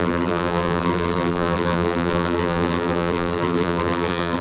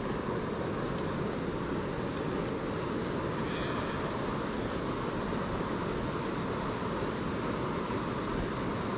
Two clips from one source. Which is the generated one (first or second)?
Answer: first